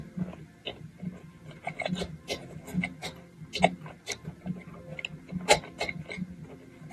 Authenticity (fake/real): real